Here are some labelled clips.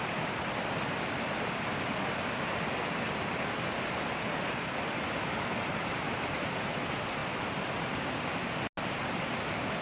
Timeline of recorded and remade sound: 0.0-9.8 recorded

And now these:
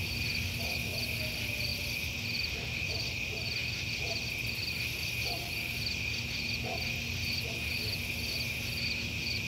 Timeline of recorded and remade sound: 0.0-9.5 recorded

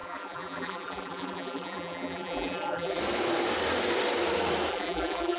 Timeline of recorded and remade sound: 0.0-3.0 remade; 3.0-4.7 recorded; 4.7-5.4 remade

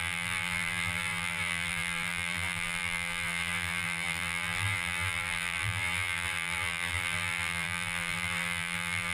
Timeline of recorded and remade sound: 0.0-9.1 remade